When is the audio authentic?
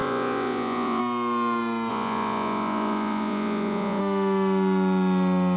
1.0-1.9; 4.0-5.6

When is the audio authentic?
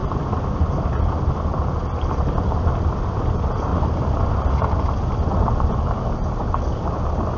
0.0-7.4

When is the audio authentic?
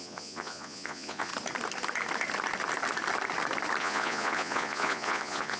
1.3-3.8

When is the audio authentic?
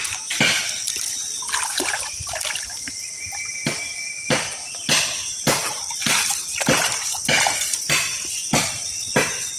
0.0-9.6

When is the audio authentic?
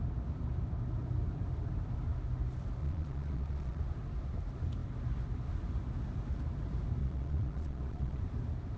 0.0-2.8; 3.8-7.0; 8.2-8.8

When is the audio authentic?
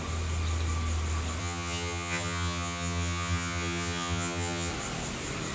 0.0-1.4; 4.7-5.5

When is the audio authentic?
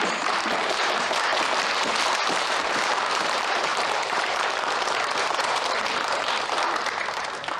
1.3-2.4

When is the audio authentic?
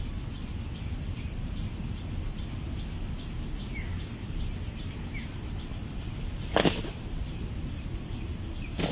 0.0-8.9